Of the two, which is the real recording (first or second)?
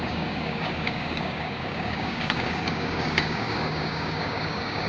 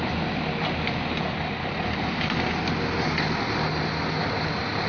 second